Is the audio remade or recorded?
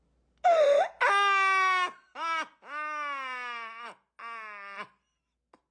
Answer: recorded